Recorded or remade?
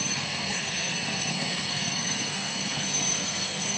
remade